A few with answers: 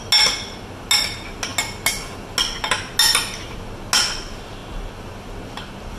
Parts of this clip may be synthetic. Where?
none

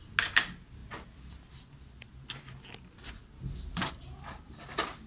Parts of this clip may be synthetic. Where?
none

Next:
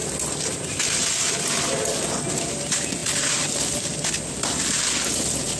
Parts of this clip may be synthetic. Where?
none

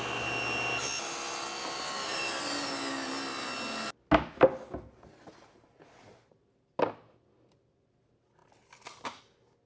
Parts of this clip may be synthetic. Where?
none